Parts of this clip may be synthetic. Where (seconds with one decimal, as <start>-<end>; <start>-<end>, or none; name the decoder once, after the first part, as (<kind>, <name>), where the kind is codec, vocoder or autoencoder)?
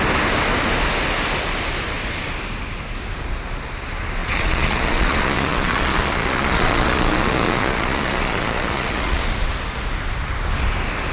4.2-9.2 (vocoder, Vocos)